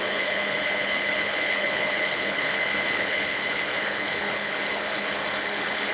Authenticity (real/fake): fake